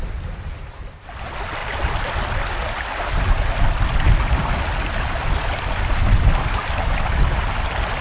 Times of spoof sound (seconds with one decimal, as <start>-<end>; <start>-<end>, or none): none